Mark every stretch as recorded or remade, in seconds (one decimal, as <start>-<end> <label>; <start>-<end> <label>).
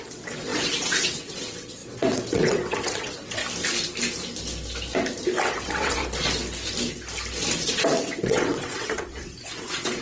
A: 0.0-3.4 remade; 3.4-5.5 recorded; 5.5-6.0 remade; 6.0-7.6 recorded; 7.6-10.0 remade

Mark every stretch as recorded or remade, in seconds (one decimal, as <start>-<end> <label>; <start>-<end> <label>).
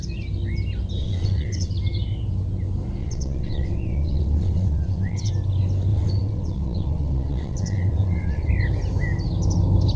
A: 0.0-1.0 recorded; 1.0-1.7 remade; 1.7-3.0 recorded; 3.0-5.3 remade; 5.3-5.9 recorded; 5.9-8.5 remade; 8.5-10.0 recorded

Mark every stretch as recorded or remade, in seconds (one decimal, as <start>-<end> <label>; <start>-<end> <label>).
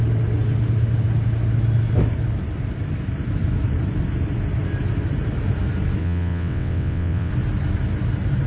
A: 0.0-6.0 recorded; 6.0-7.3 remade; 7.3-8.5 recorded